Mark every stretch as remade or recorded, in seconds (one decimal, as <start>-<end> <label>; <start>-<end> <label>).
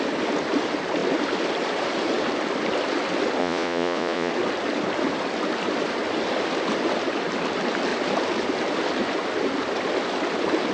0.0-3.4 recorded; 3.4-4.3 remade; 4.3-10.7 recorded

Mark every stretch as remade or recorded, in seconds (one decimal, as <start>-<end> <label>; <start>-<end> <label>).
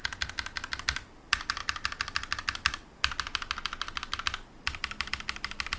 0.0-5.8 recorded